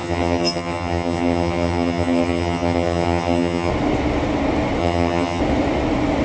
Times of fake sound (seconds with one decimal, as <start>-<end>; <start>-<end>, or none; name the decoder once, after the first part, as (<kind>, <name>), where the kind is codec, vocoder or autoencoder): 0.0-3.7 (vocoder, HiFi-GAN); 4.8-5.4